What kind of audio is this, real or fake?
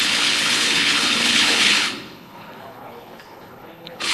fake